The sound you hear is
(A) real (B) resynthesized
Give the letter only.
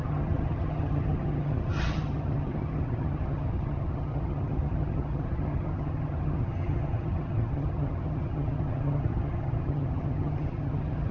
B